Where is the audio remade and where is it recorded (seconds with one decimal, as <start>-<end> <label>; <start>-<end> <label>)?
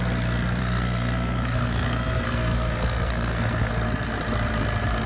0.0-0.6 recorded; 0.6-3.7 remade; 3.7-5.1 recorded